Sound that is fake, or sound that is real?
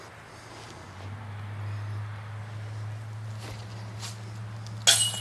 real